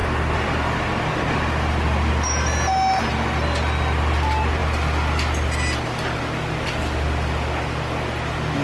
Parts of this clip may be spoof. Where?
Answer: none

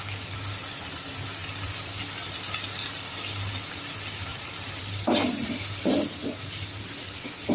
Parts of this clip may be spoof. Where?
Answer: 4.3-5.8 (vocoder, BigVGAN v2)

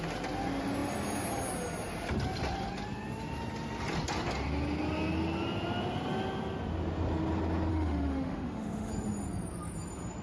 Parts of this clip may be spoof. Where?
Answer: 7.7-8.9 (autoencoder, DAC-VAE)

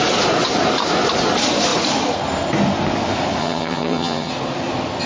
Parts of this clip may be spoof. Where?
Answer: 3.4-4.3 (vocoder, HiFi-GAN)

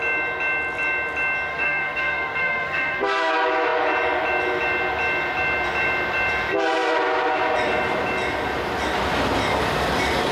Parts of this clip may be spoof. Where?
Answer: 1.5-3.3 (codec, SNAC)